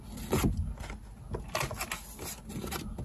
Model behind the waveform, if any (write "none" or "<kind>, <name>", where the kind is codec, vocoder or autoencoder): none